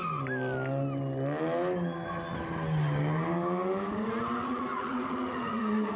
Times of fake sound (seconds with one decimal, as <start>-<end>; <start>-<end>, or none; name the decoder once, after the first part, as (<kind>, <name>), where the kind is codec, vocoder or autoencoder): 4.4-6.0 (vocoder, Vocos)